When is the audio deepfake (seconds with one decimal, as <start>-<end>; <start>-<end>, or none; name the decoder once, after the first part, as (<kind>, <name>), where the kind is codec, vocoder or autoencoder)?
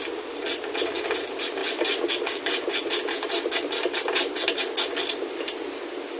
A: none